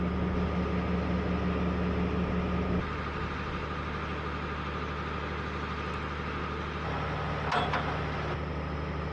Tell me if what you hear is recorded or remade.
recorded